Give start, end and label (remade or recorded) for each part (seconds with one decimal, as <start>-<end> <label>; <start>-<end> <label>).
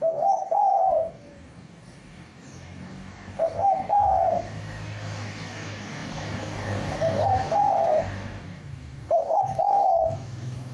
0.0-10.7 remade